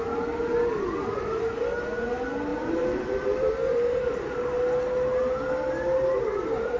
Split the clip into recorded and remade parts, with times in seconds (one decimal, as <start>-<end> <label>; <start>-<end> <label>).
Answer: 0.0-2.5 recorded; 2.5-4.1 remade; 4.1-6.8 recorded